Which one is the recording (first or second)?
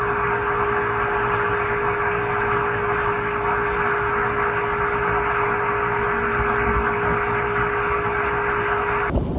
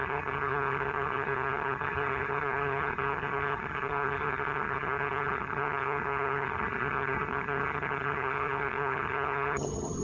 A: first